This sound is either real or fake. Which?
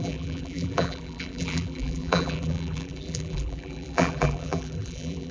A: fake